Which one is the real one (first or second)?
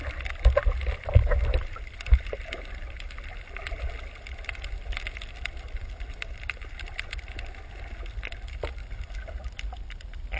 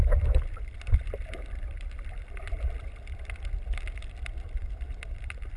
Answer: first